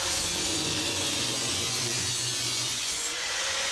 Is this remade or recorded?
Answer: remade